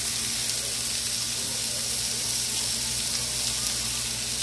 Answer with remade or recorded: recorded